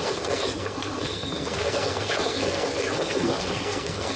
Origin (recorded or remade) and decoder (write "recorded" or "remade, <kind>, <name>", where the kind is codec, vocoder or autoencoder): remade, codec, SNAC